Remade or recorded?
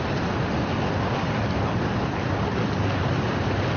recorded